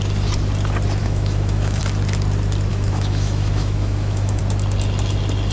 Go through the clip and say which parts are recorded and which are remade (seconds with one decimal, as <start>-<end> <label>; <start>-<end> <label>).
0.0-1.0 recorded; 1.0-1.8 remade; 1.8-2.7 recorded; 2.7-4.4 remade; 4.4-5.5 recorded